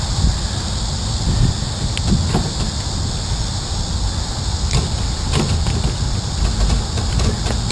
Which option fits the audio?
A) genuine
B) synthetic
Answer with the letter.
A